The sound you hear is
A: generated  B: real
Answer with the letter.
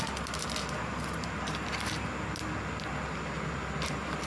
B